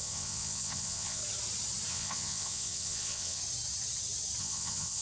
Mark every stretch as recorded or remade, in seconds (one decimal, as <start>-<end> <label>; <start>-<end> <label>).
0.0-1.2 remade; 1.2-1.9 recorded; 1.9-3.4 remade; 3.4-4.4 recorded; 4.4-5.0 remade